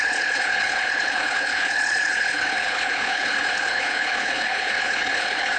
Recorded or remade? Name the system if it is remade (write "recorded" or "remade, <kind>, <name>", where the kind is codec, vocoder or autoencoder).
remade, codec, HILCodec